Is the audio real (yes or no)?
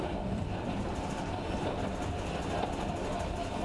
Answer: yes